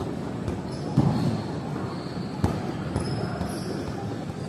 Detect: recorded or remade recorded